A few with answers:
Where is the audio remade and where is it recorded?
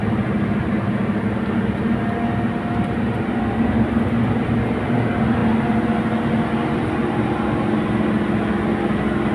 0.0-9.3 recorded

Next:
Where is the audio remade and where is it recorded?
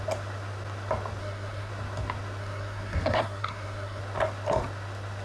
0.0-1.2 recorded; 1.2-1.7 remade; 1.7-2.4 recorded; 2.4-4.0 remade; 4.0-5.2 recorded